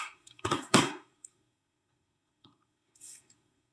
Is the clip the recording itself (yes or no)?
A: no